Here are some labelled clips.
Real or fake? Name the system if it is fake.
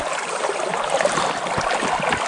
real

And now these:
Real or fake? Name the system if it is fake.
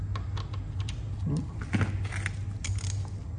real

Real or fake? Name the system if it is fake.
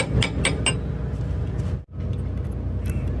real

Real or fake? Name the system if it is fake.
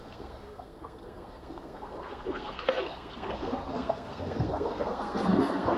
fake, codec, SNAC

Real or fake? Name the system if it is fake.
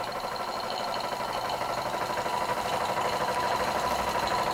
fake, vocoder, BigVGAN v2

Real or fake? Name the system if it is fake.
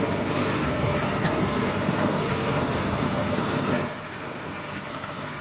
fake, codec, SNAC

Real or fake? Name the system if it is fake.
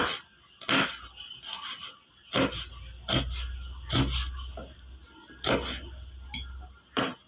real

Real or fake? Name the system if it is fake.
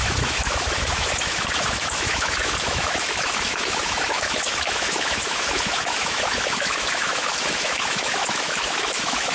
fake, autoencoder, DAC-VAE